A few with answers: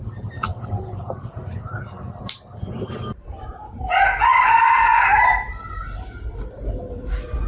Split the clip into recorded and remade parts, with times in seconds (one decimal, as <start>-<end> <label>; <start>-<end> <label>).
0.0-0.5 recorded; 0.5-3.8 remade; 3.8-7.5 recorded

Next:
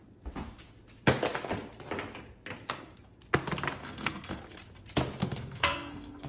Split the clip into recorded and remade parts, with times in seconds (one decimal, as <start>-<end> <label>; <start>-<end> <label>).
0.0-3.8 recorded; 3.8-4.4 remade; 4.4-5.2 recorded; 5.2-6.3 remade

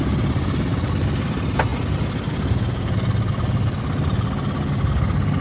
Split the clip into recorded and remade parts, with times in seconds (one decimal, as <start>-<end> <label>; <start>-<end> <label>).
0.0-5.4 recorded